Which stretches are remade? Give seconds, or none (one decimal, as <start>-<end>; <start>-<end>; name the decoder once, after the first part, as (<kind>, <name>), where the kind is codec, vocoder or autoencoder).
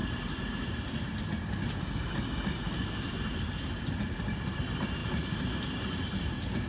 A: none